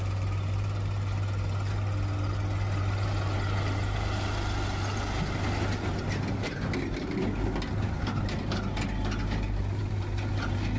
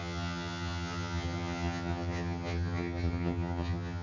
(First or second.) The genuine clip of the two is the first